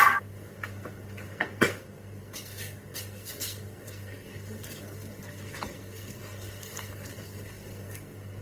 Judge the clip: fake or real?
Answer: fake